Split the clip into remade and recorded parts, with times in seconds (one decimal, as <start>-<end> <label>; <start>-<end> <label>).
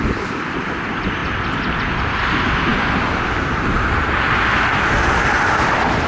0.0-6.1 recorded